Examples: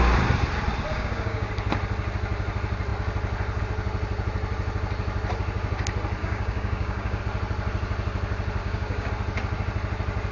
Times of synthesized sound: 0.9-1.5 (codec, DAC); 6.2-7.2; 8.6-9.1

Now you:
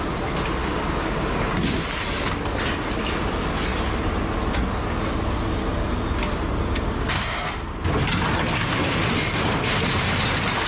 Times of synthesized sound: 0.6-1.5 (codec, DAC)